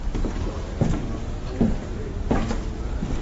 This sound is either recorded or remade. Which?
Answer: recorded